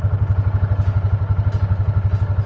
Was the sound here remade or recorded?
recorded